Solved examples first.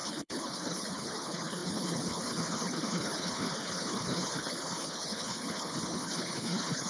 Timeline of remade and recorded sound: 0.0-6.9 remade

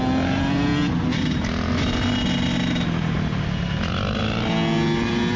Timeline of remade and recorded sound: 0.0-5.4 recorded